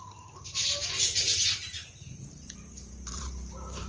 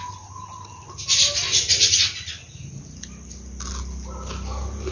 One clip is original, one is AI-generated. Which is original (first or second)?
second